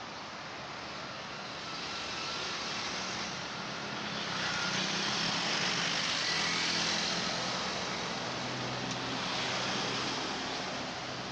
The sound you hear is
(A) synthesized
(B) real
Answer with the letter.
B